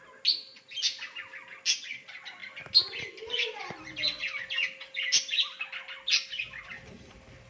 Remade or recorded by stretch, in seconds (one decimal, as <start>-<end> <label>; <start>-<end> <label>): 0.0-7.5 recorded

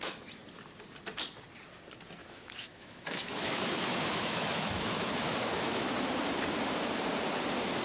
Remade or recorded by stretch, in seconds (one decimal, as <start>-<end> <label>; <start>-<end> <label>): 0.0-2.2 recorded; 2.2-5.8 remade; 5.8-7.8 recorded

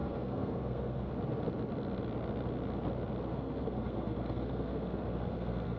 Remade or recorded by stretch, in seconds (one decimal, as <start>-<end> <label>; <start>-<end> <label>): 0.0-1.1 remade; 1.1-3.3 recorded; 3.3-5.8 remade

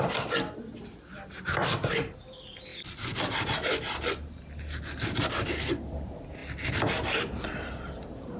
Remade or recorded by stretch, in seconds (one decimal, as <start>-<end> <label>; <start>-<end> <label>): 0.0-8.4 recorded

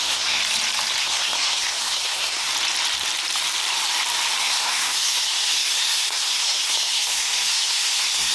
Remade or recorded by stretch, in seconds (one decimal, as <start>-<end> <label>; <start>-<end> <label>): 0.0-0.4 remade; 0.4-1.0 recorded; 1.0-2.5 remade; 2.5-4.4 recorded; 4.4-8.3 remade

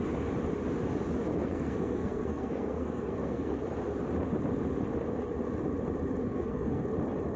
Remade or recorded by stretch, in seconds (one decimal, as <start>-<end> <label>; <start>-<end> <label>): 0.0-1.3 recorded; 1.3-3.6 remade; 3.6-6.2 recorded; 6.2-6.8 remade; 6.8-7.4 recorded

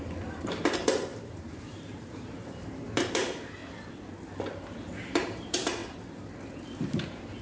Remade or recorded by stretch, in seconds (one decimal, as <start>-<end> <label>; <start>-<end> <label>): 0.0-3.6 remade; 3.6-4.9 recorded; 4.9-5.8 remade; 5.8-7.4 recorded